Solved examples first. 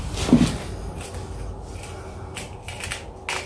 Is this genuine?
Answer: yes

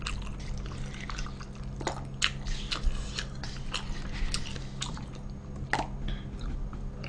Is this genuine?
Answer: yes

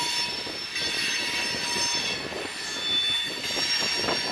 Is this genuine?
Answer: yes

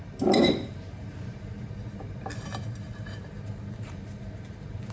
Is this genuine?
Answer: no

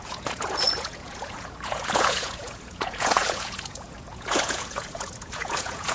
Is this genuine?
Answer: no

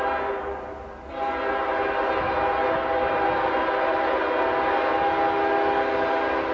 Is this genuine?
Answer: yes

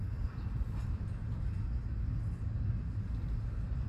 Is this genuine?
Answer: yes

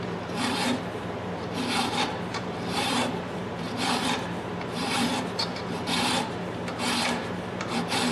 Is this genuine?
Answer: no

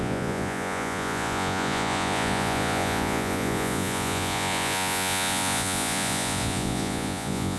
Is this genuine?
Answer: no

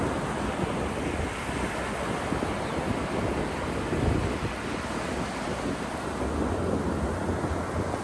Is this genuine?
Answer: yes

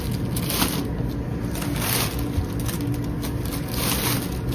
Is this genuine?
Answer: yes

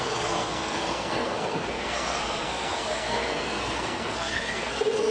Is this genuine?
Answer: no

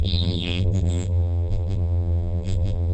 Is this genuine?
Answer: no